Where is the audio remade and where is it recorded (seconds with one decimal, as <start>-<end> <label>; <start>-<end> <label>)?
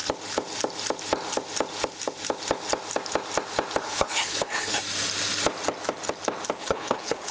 0.0-3.8 recorded; 3.8-4.8 remade; 4.8-6.6 recorded; 6.6-7.3 remade